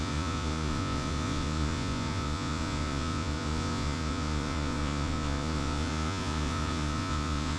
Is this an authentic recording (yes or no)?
no